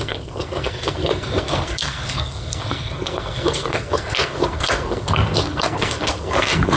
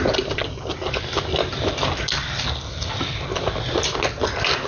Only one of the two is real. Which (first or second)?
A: second